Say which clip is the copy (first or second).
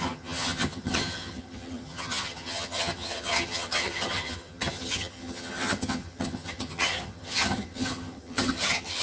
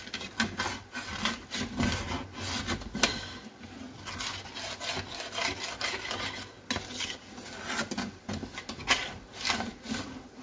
first